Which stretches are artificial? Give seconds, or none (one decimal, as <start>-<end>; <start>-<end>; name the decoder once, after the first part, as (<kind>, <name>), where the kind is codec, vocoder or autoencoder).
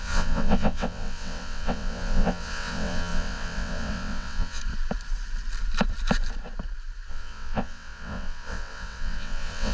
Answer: 0.0-4.6 (vocoder, WaveNeXt); 7.1-9.7